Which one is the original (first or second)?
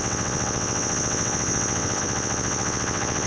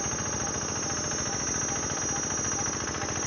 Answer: second